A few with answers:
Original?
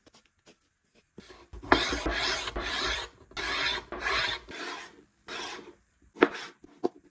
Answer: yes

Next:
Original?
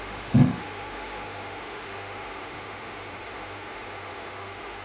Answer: no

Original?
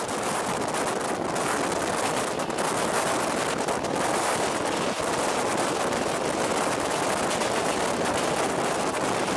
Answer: yes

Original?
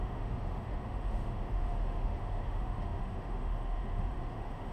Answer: no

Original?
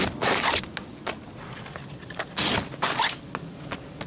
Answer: yes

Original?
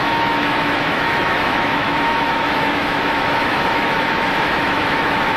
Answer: no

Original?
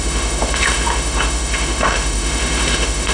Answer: no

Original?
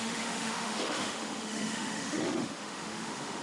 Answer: no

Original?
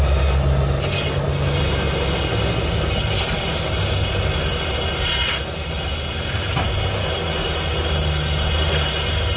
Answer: yes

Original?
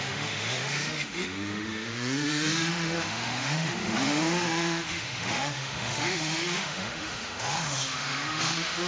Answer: no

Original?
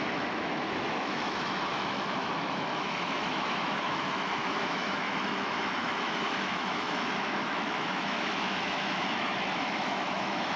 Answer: no